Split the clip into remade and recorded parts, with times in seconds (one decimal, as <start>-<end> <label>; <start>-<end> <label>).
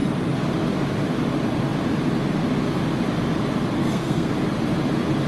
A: 0.0-3.8 recorded; 3.8-4.3 remade; 4.3-5.3 recorded